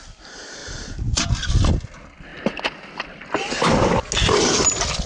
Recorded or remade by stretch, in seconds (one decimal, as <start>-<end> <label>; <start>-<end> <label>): 0.0-0.6 recorded; 0.6-1.3 remade; 1.3-5.1 recorded